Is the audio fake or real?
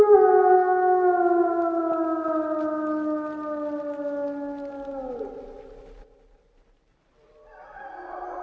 real